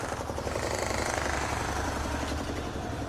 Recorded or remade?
remade